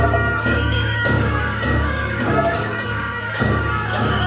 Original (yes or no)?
no